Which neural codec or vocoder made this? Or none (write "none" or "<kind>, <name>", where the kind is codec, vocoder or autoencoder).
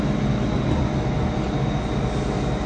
none